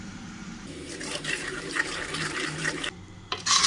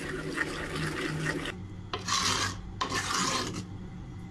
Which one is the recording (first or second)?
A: second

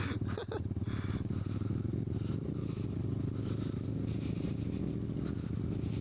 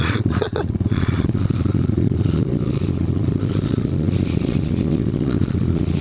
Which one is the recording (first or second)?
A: first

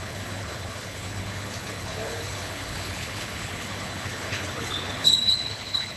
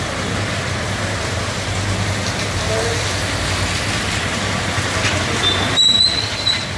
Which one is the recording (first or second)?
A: second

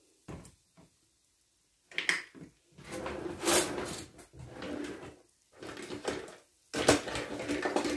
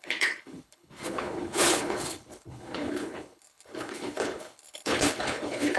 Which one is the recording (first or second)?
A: first